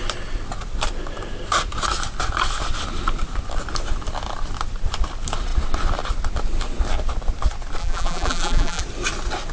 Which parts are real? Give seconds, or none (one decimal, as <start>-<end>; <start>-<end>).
0.0-7.8; 8.8-9.5